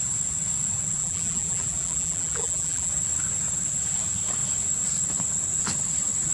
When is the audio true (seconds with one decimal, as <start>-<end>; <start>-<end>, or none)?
0.0-1.0; 2.9-6.3